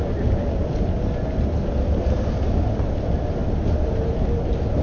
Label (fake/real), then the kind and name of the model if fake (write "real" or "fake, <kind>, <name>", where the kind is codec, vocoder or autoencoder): real